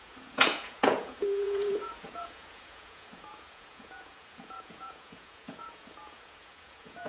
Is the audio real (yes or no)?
no